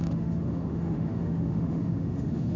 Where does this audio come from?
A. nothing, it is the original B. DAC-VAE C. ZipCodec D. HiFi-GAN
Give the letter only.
B